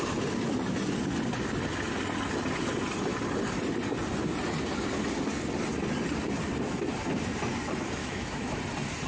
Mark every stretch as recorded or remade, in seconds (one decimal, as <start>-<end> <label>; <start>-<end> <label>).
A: 0.0-8.0 recorded; 8.0-8.6 remade; 8.6-9.1 recorded